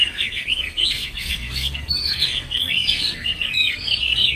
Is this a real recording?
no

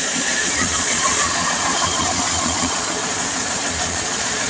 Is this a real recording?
no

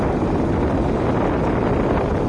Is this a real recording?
yes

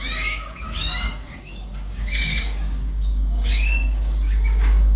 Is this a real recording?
no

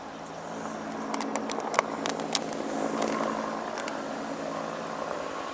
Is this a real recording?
yes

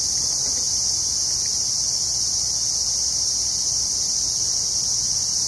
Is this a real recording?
yes